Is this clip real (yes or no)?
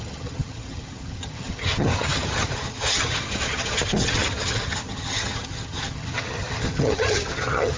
no